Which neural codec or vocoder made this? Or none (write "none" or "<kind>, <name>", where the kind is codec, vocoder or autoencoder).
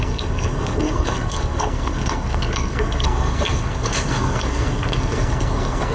codec, SNAC